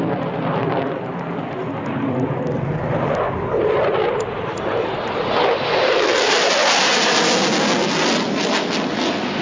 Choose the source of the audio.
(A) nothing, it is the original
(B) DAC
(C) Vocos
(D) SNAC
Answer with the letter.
A